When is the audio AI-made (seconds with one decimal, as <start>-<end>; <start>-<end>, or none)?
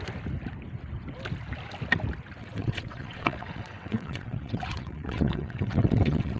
2.4-6.4